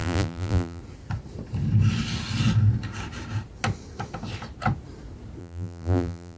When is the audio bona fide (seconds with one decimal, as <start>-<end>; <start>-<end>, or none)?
0.8-5.4